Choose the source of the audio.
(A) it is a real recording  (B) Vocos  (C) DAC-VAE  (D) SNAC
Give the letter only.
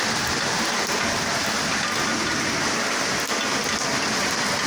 A